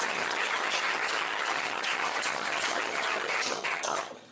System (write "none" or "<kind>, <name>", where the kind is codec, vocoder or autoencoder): vocoder, HiFi-GAN